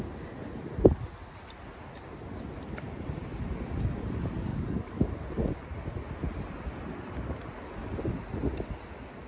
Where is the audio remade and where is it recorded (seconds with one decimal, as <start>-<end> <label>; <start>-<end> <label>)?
0.0-4.5 recorded; 4.5-5.1 remade; 5.1-9.3 recorded